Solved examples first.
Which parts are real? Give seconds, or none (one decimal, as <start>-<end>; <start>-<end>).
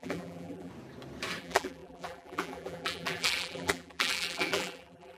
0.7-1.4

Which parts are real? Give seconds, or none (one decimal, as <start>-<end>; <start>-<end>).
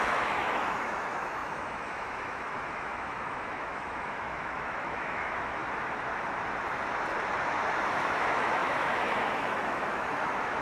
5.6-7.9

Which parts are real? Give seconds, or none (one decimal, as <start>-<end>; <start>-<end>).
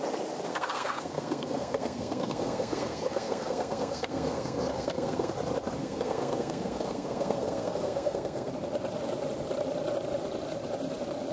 0.0-0.5; 5.3-5.8; 8.5-11.3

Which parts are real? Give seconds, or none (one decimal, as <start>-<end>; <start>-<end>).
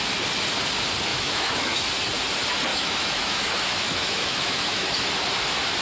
0.0-1.1; 1.8-2.7; 5.1-5.8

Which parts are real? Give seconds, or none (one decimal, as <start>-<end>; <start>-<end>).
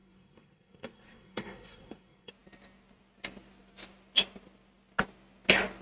2.3-5.8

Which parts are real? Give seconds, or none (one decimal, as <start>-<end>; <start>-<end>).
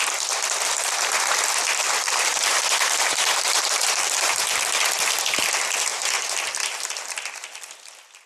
0.0-2.3; 4.6-5.9; 6.4-8.3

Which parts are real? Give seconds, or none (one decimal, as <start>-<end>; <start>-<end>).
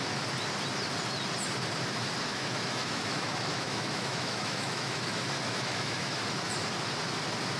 0.0-2.3; 6.2-7.6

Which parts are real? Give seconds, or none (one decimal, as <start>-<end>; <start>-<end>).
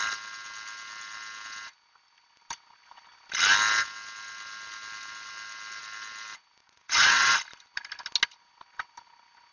0.0-6.6; 7.3-9.5